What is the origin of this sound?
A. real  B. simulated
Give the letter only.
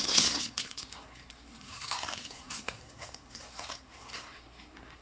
B